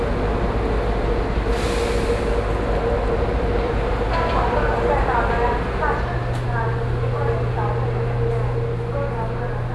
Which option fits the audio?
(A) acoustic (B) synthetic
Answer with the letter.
A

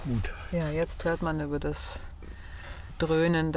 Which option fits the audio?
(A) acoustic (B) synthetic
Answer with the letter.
A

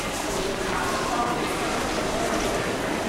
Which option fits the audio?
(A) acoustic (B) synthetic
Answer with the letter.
A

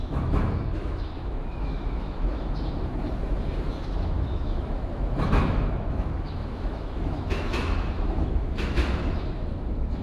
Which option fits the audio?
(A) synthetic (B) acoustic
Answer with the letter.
A